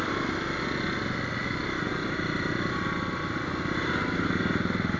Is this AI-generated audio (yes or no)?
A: no